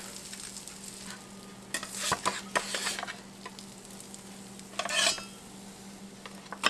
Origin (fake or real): real